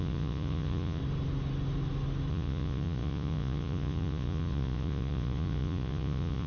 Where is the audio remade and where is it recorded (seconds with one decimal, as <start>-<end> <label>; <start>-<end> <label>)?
0.0-1.0 remade; 1.0-2.3 recorded; 2.3-6.5 remade